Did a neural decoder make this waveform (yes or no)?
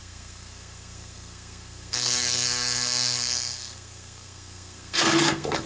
yes